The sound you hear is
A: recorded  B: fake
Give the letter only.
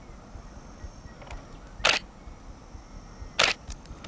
A